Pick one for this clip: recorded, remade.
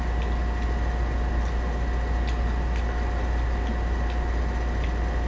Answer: recorded